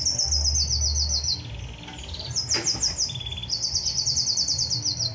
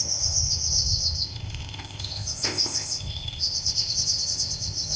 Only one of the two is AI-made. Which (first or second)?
second